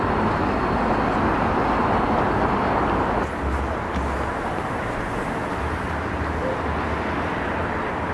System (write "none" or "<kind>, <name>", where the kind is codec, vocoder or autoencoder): none